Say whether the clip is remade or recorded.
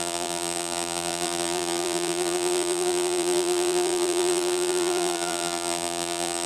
remade